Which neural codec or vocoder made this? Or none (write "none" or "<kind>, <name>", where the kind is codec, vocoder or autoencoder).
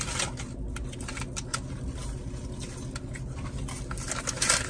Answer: none